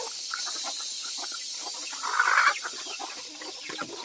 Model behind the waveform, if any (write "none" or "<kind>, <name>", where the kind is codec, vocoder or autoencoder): none